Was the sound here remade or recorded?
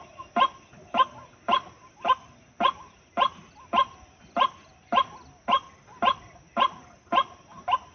recorded